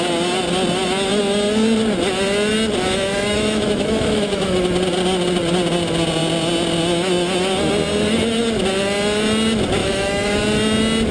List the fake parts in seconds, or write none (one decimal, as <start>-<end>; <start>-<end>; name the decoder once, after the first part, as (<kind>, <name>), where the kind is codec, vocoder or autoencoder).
3.1-4.6 (autoencoder, DAC-VAE); 9.8-10.4